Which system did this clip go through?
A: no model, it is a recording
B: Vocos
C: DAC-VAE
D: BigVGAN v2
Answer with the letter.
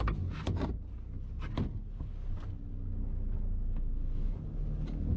A